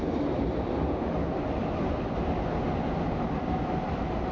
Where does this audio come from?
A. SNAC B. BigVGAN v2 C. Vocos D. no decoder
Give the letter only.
D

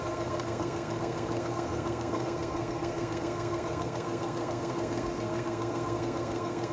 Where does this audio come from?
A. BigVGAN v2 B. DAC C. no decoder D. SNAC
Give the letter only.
D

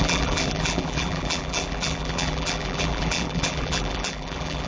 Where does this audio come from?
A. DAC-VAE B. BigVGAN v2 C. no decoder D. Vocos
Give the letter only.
B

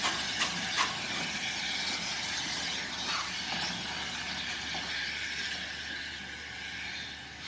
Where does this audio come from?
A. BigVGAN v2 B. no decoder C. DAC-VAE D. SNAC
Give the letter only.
B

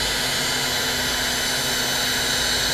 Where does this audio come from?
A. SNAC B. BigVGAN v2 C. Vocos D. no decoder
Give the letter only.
D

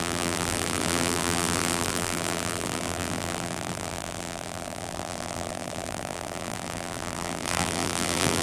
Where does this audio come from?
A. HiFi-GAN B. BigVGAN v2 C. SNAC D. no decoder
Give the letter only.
B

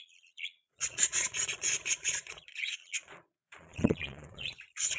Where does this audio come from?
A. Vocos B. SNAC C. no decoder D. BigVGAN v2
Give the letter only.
A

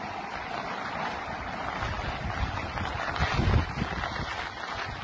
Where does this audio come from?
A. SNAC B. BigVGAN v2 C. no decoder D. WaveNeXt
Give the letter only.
C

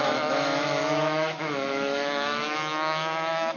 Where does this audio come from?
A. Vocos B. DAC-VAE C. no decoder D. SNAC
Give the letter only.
B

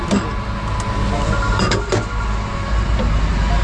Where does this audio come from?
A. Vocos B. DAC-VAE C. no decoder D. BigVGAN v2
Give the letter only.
C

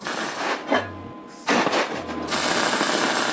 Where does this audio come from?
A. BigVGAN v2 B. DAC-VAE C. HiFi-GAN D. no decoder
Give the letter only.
D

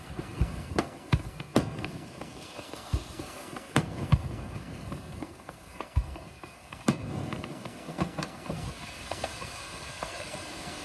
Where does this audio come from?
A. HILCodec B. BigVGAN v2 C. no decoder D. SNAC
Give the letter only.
D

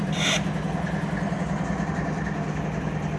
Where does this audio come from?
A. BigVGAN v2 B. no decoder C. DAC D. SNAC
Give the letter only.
B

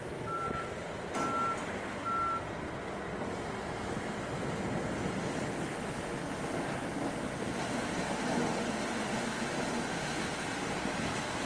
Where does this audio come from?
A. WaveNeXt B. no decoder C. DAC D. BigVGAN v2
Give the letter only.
B